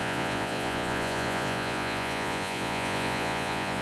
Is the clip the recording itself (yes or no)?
no